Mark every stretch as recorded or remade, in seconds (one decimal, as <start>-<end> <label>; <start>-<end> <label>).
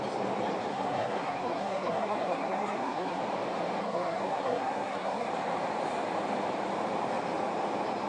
0.0-0.7 recorded; 0.7-3.2 remade; 3.2-3.8 recorded; 3.8-5.3 remade; 5.3-8.1 recorded